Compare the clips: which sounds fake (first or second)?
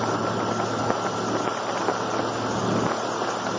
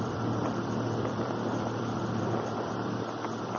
second